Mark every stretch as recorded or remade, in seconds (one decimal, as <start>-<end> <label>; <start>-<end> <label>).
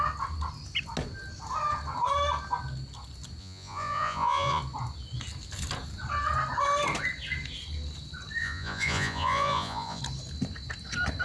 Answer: 0.0-3.4 recorded; 3.4-4.6 remade; 4.6-8.4 recorded; 8.4-10.0 remade; 10.0-11.2 recorded